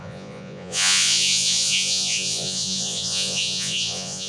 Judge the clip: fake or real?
fake